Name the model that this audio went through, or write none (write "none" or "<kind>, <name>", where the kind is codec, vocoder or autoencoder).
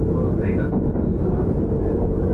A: none